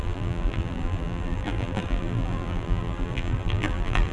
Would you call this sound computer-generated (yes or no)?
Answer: yes